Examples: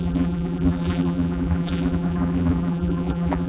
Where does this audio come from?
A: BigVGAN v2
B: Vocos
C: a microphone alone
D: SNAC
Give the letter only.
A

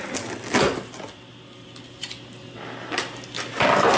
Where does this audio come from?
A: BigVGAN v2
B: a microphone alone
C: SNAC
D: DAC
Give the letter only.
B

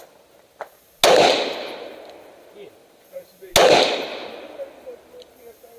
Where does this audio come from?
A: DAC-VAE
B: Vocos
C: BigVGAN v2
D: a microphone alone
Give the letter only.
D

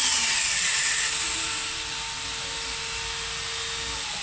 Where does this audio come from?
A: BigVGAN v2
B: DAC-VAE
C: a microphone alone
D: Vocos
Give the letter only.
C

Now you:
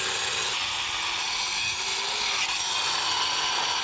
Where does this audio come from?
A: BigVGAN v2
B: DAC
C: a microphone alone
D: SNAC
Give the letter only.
C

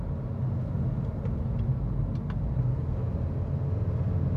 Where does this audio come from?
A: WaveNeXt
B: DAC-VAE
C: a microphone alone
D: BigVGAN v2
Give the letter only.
C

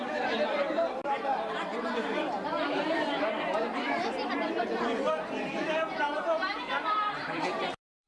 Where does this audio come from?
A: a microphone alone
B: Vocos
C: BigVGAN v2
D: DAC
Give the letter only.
C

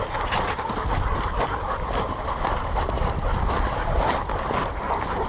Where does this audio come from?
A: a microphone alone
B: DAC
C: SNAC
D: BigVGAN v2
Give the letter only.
A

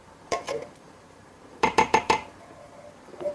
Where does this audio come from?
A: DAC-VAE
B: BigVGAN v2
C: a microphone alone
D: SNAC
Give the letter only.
B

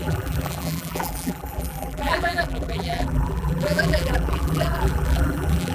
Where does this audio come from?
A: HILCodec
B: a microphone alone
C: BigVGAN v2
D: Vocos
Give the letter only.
C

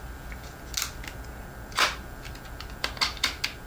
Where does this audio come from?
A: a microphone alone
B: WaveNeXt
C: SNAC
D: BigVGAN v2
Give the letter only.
A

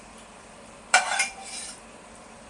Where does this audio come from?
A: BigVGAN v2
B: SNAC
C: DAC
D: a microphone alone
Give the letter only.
A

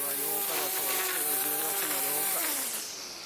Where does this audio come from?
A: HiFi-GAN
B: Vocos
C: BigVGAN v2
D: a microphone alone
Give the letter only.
C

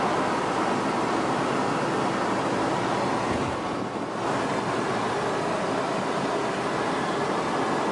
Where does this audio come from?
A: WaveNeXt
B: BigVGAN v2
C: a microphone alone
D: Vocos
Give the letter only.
C